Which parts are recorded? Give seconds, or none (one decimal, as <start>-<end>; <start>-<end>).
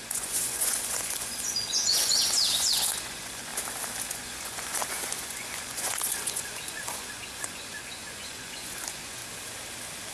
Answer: 3.5-4.1; 9.2-10.1